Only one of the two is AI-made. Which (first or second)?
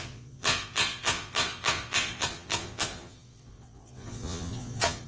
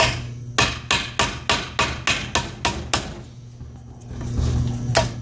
first